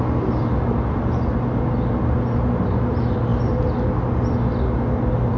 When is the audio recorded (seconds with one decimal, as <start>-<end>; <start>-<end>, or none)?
0.0-5.4